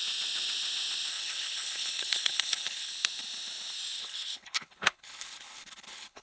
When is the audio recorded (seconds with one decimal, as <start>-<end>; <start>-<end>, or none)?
0.0-1.1; 2.9-4.0